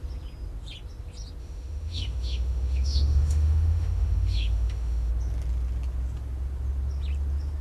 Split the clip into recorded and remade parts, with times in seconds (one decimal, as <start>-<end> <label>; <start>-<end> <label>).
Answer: 0.0-1.4 recorded; 1.4-5.1 remade; 5.1-7.6 recorded